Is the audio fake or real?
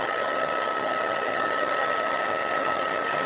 fake